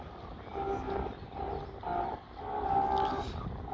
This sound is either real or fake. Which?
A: real